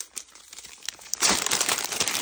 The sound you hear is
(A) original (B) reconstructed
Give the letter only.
B